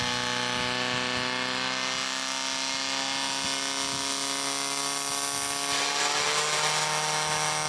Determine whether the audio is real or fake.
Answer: real